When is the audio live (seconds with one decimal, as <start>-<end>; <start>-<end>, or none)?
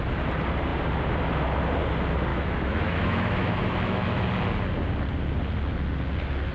0.0-2.3; 4.3-6.5